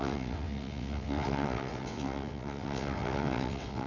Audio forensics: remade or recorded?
remade